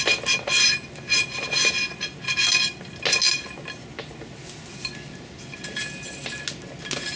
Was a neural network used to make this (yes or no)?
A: no